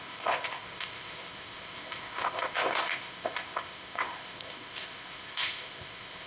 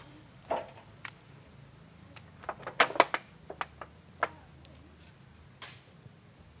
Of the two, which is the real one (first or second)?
second